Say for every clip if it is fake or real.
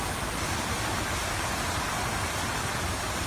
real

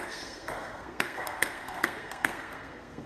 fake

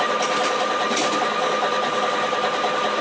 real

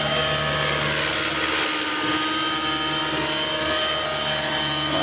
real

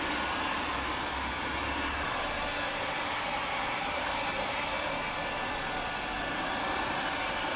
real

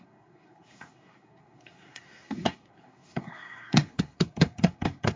fake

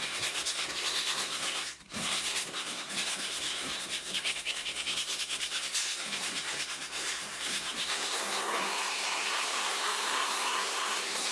fake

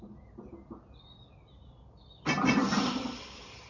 real